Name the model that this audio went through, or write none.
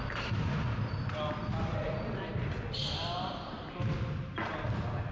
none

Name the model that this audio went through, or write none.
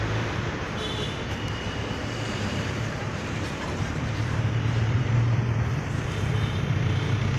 vocoder, BigVGAN v2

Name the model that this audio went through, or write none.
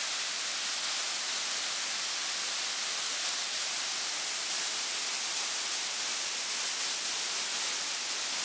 none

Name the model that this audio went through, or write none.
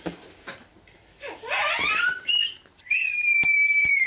vocoder, BigVGAN v2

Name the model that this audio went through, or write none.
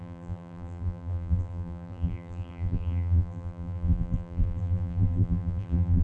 vocoder, BigVGAN v2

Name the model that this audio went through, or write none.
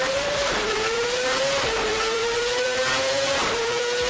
vocoder, BigVGAN v2